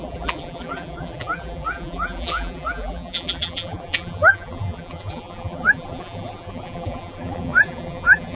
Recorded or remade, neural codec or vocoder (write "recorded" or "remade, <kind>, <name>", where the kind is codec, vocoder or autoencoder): remade, vocoder, BigVGAN v2